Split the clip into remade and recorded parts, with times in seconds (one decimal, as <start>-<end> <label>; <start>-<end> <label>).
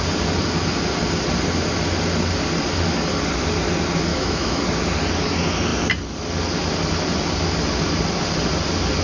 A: 0.0-4.1 recorded; 4.1-4.6 remade; 4.6-9.0 recorded